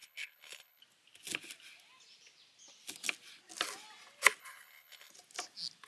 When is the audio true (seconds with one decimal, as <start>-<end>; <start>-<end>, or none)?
0.8-4.4; 5.1-5.9